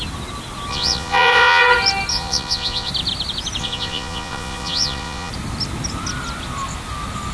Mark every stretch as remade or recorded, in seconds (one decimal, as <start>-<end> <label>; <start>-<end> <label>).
0.0-0.7 recorded; 0.7-1.6 remade; 1.6-2.1 recorded; 2.1-2.9 remade; 2.9-3.6 recorded; 3.6-5.3 remade; 5.3-7.3 recorded